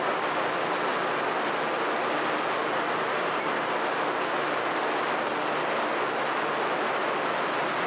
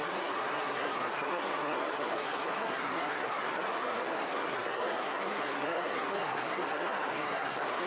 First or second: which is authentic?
first